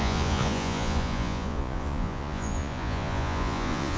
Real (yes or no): no